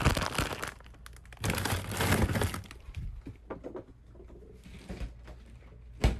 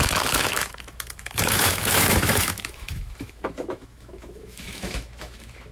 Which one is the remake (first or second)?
second